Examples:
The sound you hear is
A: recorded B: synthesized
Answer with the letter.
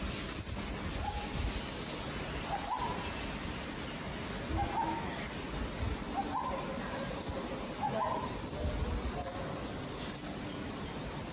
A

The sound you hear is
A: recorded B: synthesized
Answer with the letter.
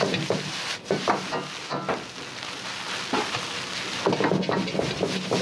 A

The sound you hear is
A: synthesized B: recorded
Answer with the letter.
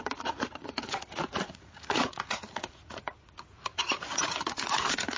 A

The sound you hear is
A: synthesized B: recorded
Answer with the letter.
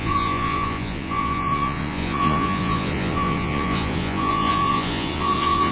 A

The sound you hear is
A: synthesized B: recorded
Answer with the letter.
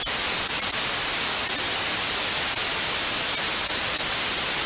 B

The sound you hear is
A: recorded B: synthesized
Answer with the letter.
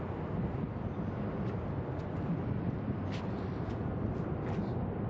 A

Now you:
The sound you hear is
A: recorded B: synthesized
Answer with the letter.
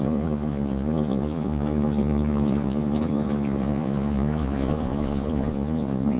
B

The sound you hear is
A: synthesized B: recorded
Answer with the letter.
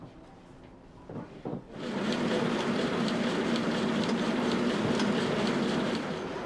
B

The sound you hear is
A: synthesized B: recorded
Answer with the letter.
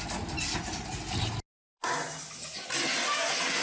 B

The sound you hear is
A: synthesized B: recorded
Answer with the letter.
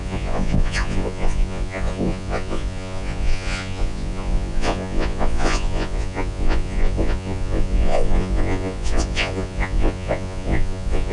A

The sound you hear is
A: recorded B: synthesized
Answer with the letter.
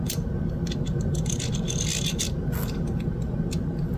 A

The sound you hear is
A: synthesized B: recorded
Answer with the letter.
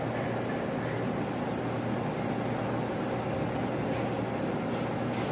B